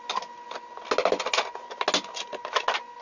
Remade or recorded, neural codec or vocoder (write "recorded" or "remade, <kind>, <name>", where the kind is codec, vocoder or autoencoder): recorded